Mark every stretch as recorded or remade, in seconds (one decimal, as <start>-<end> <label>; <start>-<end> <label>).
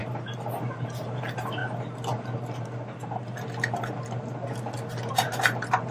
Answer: 0.0-5.9 recorded